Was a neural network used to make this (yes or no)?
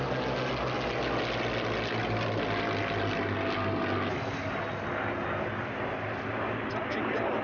no